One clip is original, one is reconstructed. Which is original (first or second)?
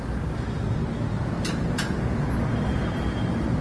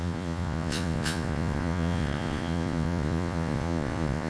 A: first